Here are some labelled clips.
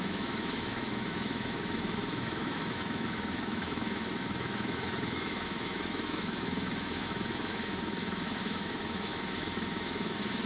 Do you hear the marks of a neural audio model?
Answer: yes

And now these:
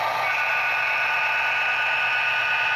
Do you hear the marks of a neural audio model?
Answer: no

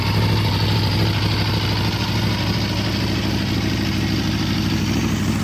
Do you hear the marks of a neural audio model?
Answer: no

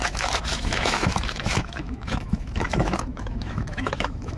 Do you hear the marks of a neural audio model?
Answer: yes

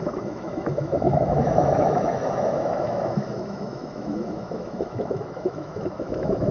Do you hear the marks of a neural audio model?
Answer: yes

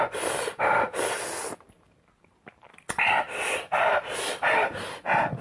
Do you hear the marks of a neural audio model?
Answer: no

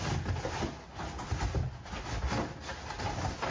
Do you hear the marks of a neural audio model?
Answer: no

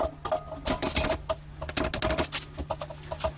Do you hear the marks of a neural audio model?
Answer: no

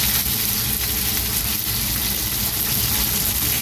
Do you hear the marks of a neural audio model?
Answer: no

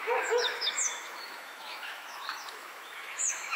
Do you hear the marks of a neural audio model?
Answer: yes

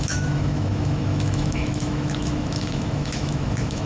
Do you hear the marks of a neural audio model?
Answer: yes